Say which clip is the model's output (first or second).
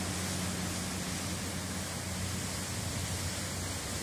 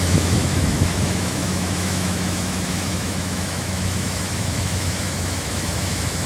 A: second